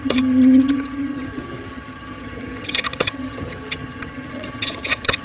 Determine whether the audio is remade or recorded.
remade